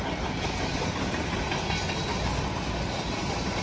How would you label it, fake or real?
real